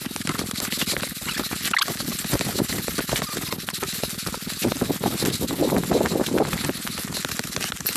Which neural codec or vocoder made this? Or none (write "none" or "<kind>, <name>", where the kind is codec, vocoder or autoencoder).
none